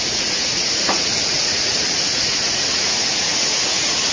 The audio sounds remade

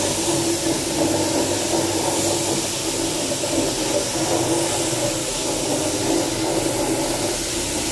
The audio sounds recorded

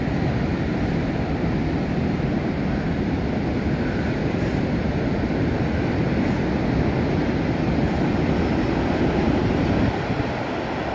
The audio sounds recorded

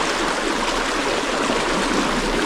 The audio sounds recorded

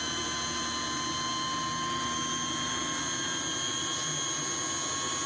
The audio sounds recorded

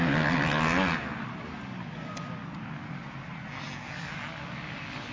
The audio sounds recorded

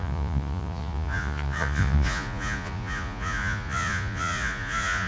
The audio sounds remade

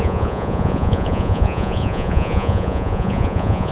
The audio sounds remade